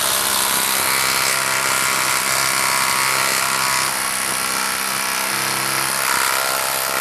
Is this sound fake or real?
real